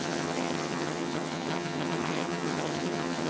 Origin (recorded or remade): remade